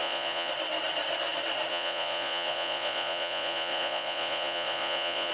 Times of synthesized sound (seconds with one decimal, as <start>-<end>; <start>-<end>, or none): 0.0-0.5; 1.7-5.3